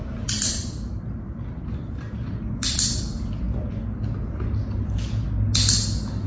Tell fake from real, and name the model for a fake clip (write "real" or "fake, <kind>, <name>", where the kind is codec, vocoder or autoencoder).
real